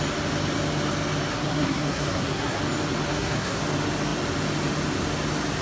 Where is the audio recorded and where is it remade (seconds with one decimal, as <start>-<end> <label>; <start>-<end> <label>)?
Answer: 0.0-1.3 recorded; 1.3-2.6 remade; 2.6-3.1 recorded; 3.1-3.6 remade; 3.6-5.6 recorded